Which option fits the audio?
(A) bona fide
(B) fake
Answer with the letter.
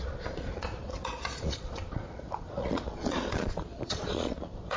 B